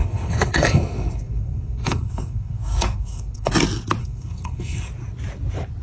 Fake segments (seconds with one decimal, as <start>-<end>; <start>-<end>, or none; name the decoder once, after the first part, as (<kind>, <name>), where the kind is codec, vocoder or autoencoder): 0.0-3.5 (codec, SNAC); 4.0-4.9